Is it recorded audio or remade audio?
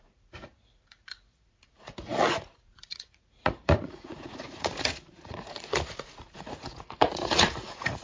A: remade